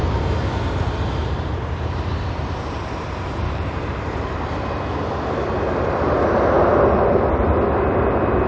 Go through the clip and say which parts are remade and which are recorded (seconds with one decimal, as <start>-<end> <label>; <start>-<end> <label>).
0.0-1.2 recorded; 1.2-4.5 remade; 4.5-8.5 recorded